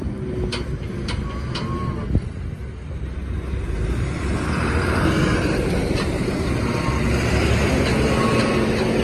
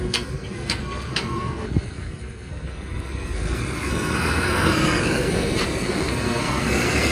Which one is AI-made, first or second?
second